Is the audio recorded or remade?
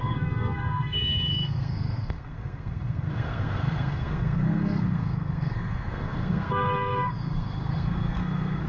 remade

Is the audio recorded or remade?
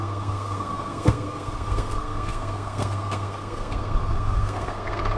remade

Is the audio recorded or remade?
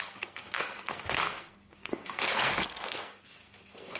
remade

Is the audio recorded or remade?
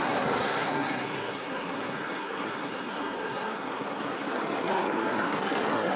remade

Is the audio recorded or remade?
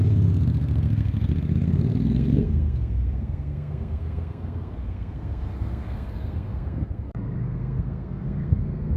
remade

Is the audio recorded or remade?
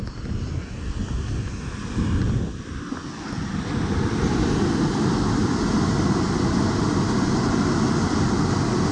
recorded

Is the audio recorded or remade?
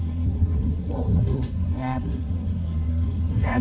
remade